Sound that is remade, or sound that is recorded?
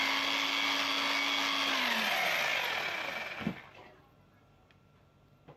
recorded